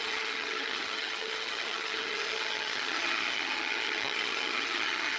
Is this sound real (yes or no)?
no